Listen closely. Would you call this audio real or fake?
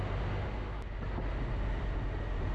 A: real